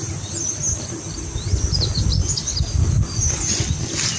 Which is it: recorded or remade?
recorded